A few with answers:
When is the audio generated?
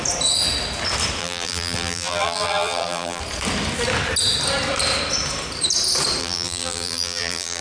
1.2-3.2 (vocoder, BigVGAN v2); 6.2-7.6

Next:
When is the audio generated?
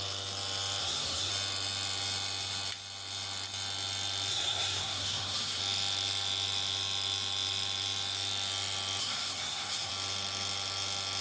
0.8-1.3 (codec, SNAC); 4.3-5.6; 9.0-9.9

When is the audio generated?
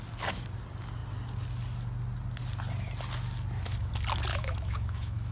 4.3-5.3 (autoencoder, DAC-VAE)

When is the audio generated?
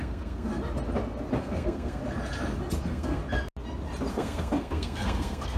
0.0-0.5 (codec, SNAC); 1.4-2.0; 2.8-3.2; 4.1-5.6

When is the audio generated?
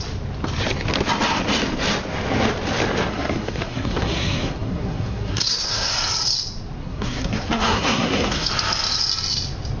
3.1-5.9 (codec, SNAC); 6.8-8.5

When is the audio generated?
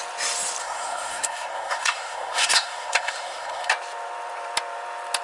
0.6-3.7 (codec, SNAC)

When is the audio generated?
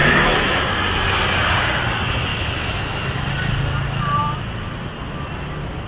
0.0-0.6 (autoencoder, DAC-VAE); 2.3-2.8